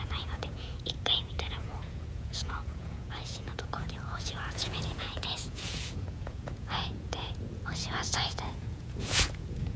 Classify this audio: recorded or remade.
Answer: remade